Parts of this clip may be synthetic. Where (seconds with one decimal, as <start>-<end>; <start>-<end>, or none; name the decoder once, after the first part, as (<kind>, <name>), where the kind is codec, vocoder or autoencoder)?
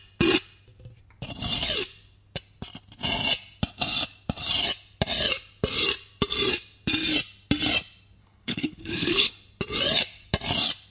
8.2-9.3 (codec, HILCodec)